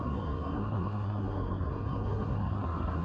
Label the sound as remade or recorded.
remade